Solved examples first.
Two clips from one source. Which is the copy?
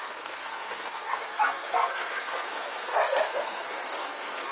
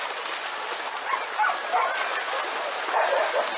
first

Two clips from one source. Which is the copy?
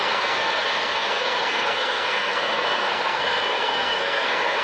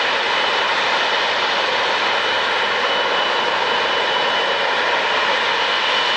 first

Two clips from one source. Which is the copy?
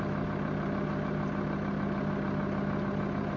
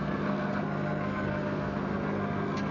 second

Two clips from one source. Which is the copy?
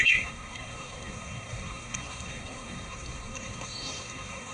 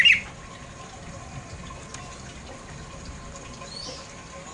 first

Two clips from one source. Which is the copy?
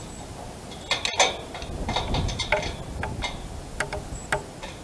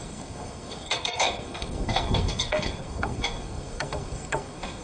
second